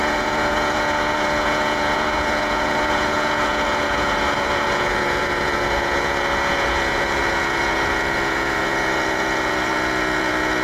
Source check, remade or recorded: remade